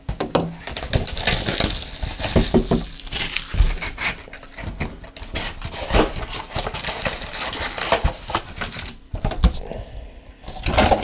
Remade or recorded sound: recorded